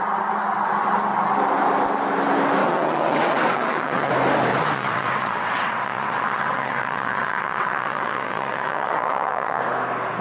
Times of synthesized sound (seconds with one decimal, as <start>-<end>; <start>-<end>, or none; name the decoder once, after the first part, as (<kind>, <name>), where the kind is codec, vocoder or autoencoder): 2.6-4.1 (vocoder, WaveNeXt); 4.5-9.6